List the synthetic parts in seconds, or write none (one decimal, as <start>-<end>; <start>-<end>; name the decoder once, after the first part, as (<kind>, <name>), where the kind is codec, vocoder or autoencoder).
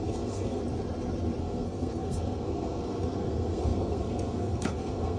0.0-0.6 (codec, SNAC); 1.4-5.2